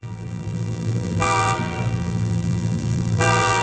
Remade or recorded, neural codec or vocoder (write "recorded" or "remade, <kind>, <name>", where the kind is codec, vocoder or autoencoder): remade, vocoder, BigVGAN v2